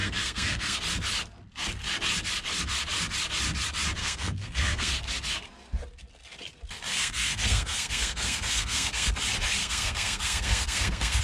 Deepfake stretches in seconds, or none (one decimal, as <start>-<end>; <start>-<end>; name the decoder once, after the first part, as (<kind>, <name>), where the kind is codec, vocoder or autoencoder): 0.0-0.8 (codec, SNAC); 4.0-4.9; 6.9-9.1; 9.6-11.2